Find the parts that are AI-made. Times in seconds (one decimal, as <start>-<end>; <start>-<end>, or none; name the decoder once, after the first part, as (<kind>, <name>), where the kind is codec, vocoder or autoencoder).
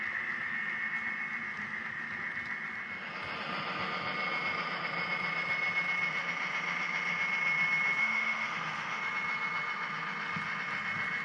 8.0-9.0 (autoencoder, DAC-VAE)